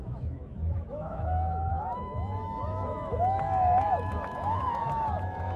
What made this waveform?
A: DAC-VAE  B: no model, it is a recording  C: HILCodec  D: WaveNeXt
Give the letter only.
A